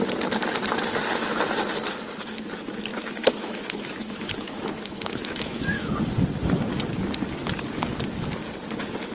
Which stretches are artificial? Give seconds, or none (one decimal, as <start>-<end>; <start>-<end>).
2.9-6.0